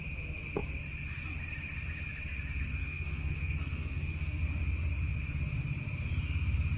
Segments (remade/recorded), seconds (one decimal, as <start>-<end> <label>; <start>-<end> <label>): 0.0-2.8 recorded; 2.8-4.4 remade; 4.4-6.8 recorded